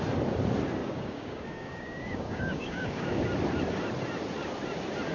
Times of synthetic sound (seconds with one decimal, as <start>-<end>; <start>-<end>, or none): 0.8-3.2